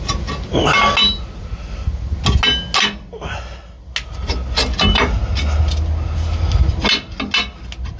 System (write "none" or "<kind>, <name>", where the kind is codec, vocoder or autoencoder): none